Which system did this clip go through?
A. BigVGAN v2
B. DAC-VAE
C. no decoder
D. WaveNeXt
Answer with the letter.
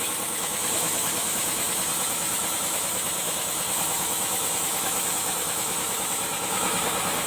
B